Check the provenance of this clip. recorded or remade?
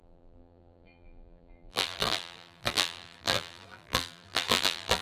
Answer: remade